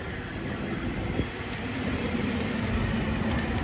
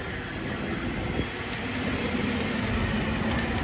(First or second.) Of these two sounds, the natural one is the second